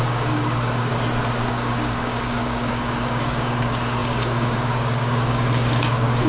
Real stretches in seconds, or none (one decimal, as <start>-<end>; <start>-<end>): 0.9-1.5